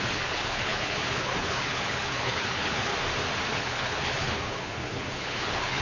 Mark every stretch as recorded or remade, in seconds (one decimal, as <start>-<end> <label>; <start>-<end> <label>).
0.0-2.9 remade; 2.9-3.5 recorded; 3.5-5.8 remade